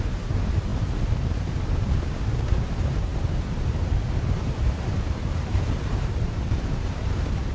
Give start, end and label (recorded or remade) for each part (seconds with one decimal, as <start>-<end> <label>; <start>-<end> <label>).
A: 0.0-7.5 remade

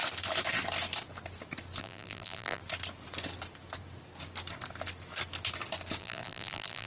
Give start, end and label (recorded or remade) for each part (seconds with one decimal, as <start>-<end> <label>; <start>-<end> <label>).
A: 0.0-1.8 recorded; 1.8-2.6 remade; 2.6-6.0 recorded; 6.0-6.9 remade

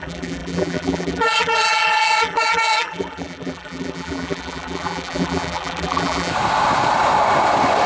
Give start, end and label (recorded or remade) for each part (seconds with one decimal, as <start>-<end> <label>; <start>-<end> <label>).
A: 0.0-6.3 remade; 6.3-7.9 recorded

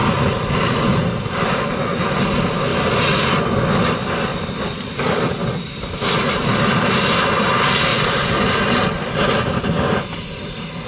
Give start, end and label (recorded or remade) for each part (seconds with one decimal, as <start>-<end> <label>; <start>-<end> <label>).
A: 0.0-1.7 remade; 1.7-4.3 recorded; 4.3-6.9 remade; 6.9-7.9 recorded; 7.9-9.6 remade; 9.6-10.9 recorded